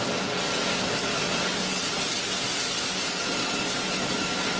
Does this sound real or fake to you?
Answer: real